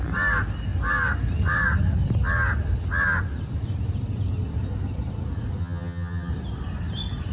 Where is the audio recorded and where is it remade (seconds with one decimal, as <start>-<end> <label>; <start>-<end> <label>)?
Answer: 0.0-5.6 recorded; 5.6-6.3 remade; 6.3-7.3 recorded